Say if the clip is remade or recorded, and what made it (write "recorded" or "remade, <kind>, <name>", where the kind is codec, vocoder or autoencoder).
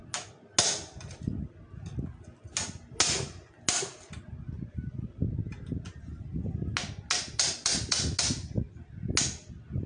recorded